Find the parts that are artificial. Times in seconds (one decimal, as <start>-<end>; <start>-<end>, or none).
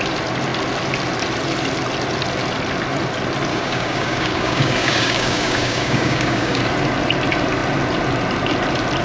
3.5-6.6